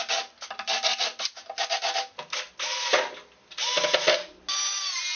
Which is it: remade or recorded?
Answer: recorded